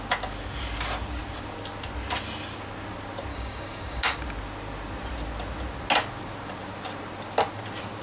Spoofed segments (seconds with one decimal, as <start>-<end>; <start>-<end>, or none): 3.3-4.0